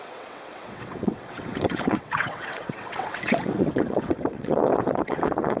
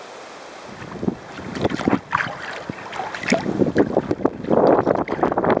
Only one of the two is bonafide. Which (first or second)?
second